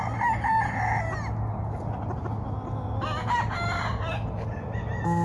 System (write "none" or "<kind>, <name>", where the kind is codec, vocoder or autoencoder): none